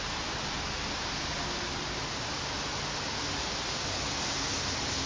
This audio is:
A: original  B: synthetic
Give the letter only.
A